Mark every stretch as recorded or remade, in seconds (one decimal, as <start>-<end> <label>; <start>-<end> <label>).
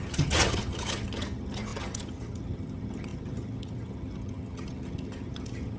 0.0-5.8 remade